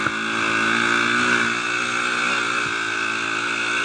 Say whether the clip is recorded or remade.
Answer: recorded